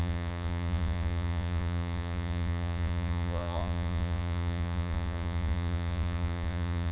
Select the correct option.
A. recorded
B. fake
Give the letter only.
B